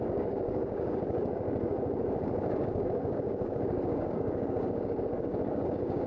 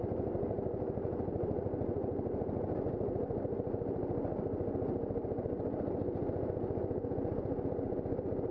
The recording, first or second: second